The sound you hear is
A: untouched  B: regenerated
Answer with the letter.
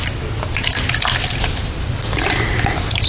A